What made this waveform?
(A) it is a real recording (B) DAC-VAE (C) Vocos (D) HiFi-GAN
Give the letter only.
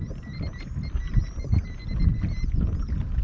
A